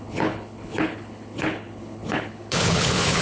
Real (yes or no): no